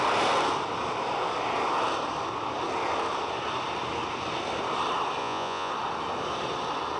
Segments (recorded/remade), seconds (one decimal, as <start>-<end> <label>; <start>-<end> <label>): 0.0-5.2 recorded; 5.2-5.7 remade; 5.7-7.0 recorded